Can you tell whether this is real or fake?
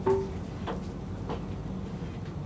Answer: real